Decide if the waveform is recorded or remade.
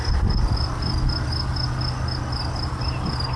recorded